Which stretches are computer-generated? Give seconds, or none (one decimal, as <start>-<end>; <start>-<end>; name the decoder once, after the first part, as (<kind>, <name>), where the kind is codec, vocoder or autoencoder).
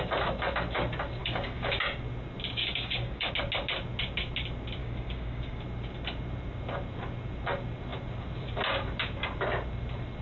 1.2-1.8 (codec, DAC); 2.6-3.3; 4.8-5.6